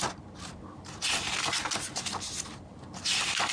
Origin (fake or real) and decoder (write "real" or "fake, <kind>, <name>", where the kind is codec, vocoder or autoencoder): real